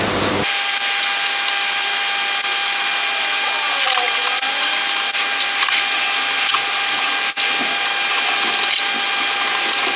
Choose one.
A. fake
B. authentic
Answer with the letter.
B